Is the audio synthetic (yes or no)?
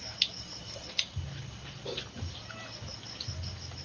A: no